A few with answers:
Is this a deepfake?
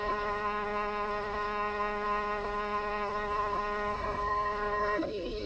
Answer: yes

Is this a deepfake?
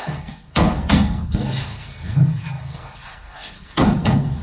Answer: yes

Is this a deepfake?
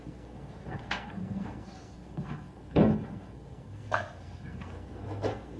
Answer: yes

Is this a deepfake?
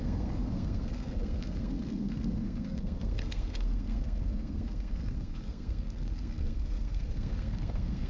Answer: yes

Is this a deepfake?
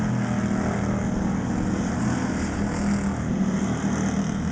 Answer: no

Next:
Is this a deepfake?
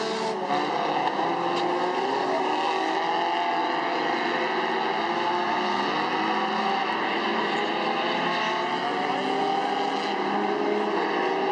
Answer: no